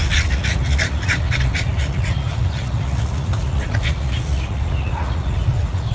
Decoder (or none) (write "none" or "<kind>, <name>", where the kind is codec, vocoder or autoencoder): vocoder, Vocos